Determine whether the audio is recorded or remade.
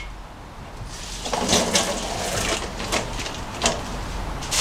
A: recorded